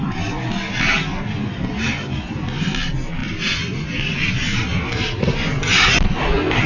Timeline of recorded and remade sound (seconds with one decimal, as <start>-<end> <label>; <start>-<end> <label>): 0.0-6.7 recorded